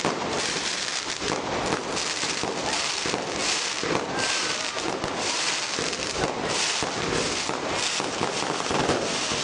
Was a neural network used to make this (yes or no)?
yes